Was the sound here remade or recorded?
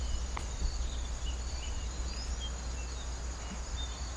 recorded